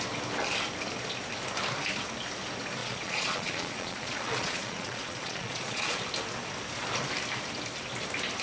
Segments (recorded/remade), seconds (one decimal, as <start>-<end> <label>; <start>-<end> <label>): 0.0-2.8 recorded; 2.8-6.0 remade; 6.0-8.4 recorded